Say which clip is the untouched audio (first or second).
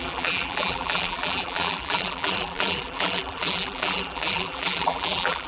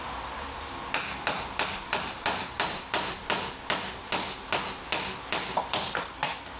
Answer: second